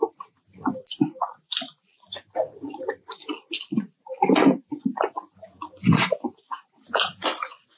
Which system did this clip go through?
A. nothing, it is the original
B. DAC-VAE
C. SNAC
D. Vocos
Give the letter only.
A